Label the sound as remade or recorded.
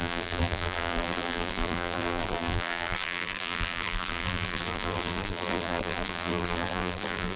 remade